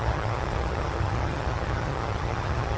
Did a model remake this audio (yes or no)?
yes